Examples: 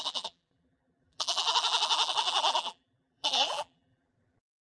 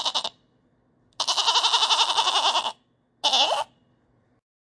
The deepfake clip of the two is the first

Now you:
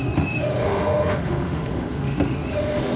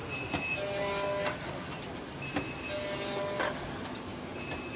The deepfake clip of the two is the first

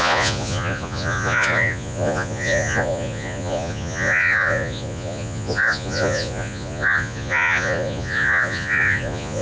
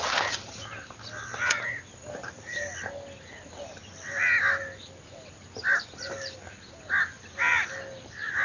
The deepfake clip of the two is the first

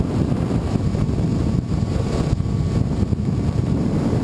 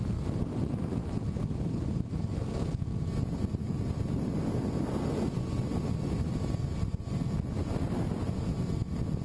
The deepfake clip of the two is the first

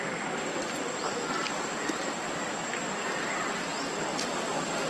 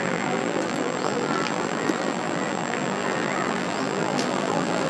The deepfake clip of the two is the second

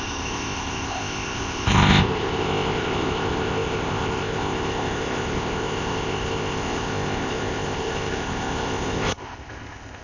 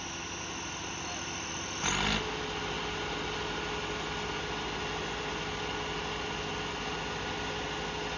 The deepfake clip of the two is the first